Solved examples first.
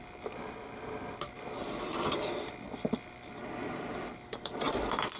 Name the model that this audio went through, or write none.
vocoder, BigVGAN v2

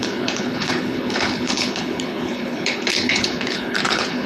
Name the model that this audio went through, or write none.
codec, HILCodec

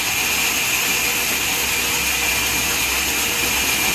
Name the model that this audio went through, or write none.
none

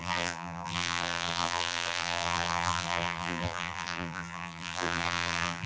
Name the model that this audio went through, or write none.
vocoder, BigVGAN v2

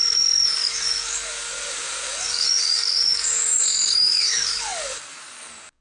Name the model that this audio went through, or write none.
codec, DAC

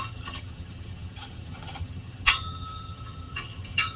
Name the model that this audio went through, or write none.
vocoder, HiFi-GAN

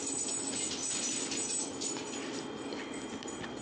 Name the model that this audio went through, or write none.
none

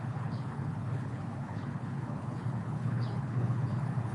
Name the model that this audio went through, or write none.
codec, HILCodec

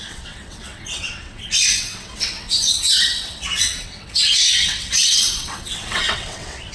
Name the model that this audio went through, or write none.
vocoder, WaveNeXt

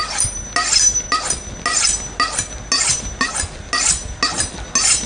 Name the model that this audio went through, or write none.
none